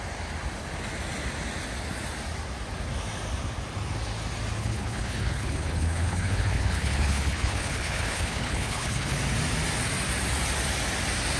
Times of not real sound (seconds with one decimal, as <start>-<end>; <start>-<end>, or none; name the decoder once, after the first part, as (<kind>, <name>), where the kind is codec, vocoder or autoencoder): 4.6-9.2 (codec, HILCodec)